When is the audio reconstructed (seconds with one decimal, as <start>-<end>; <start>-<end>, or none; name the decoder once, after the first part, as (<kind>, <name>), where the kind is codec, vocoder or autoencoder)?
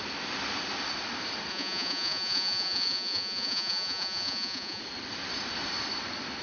1.5-4.8 (vocoder, Vocos)